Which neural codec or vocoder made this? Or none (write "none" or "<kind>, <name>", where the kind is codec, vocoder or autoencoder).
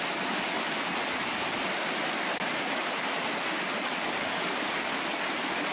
none